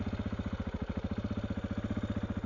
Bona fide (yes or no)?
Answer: yes